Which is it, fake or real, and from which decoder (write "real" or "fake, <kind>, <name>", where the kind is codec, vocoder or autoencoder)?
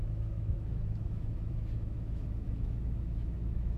fake, autoencoder, DAC-VAE